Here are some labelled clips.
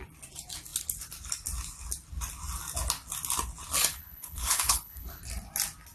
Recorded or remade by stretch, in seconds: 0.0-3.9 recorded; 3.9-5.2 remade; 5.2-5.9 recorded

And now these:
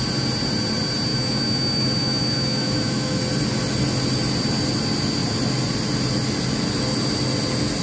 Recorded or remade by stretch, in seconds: 0.0-1.1 recorded; 1.1-3.2 remade; 3.2-7.8 recorded

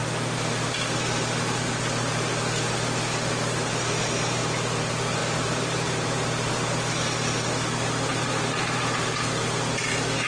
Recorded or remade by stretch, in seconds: 0.0-5.2 recorded; 5.2-6.5 remade; 6.5-8.1 recorded; 8.1-8.8 remade; 8.8-10.3 recorded

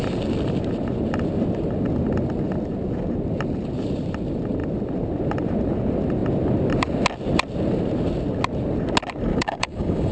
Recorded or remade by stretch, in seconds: 0.0-9.3 recorded; 9.3-10.1 remade

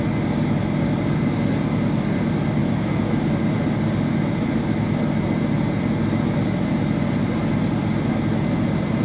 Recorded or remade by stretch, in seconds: 0.0-2.6 recorded; 2.6-3.2 remade; 3.2-9.0 recorded

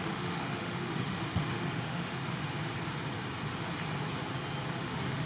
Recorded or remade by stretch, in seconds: 0.0-2.2 remade; 2.2-4.8 recorded; 4.8-5.3 remade